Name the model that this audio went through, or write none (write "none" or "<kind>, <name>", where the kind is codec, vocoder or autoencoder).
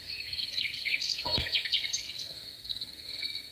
codec, SNAC